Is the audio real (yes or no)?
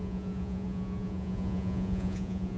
no